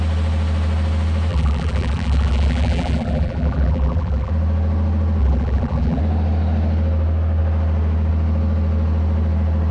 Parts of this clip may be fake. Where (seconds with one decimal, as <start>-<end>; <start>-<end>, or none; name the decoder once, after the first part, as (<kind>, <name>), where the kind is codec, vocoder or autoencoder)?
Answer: 1.3-4.3 (vocoder, BigVGAN v2); 5.2-6.0